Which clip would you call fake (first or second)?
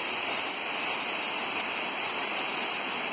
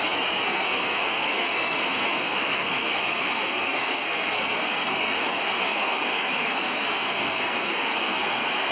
second